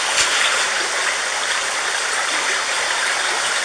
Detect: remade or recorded recorded